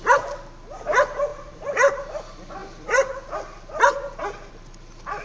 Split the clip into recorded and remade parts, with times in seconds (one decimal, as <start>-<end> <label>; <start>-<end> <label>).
0.0-1.3 recorded; 1.3-1.9 remade; 1.9-5.2 recorded